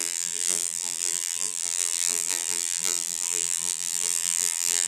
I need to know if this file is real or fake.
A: fake